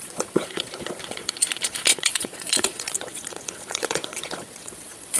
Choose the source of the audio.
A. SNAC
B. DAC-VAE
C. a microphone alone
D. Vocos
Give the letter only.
D